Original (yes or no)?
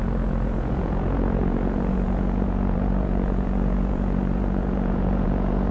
no